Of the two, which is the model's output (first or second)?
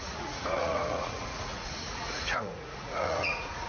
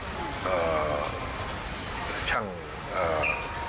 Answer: first